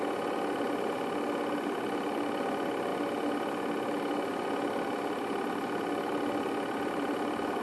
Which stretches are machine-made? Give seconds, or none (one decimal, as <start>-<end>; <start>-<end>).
none